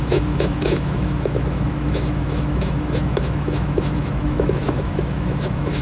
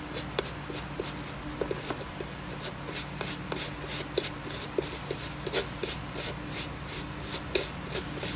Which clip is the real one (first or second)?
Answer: second